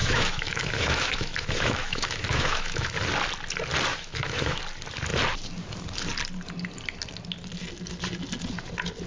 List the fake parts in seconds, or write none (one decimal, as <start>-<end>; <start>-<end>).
0.0-2.9; 3.9-4.6